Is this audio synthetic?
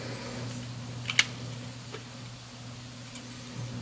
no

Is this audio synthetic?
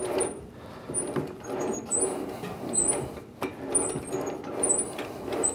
no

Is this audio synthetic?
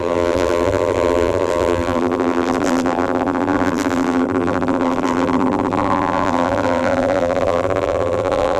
yes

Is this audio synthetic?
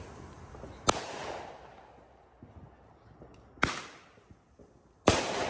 no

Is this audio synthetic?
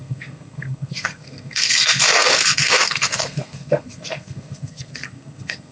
yes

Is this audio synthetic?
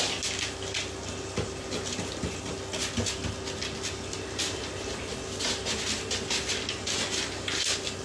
no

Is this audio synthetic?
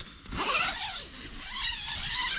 no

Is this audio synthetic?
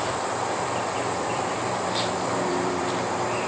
yes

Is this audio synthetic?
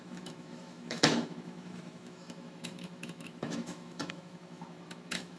yes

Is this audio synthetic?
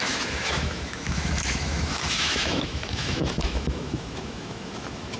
yes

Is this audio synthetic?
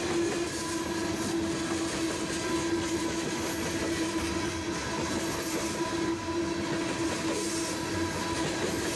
no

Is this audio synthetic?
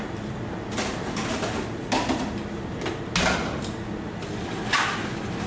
no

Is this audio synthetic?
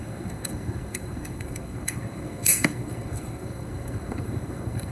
yes